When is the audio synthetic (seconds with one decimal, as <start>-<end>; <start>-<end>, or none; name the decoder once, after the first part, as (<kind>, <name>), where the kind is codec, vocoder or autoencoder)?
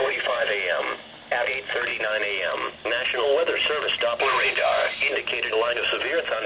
0.0-0.5 (vocoder, Vocos); 4.3-4.9